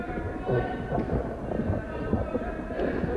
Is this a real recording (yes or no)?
yes